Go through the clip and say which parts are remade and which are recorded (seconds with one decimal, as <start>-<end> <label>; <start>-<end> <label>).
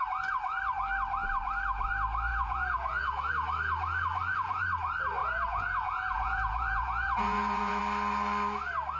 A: 0.0-2.3 recorded; 2.3-3.3 remade; 3.3-5.2 recorded; 5.2-7.8 remade; 7.8-9.0 recorded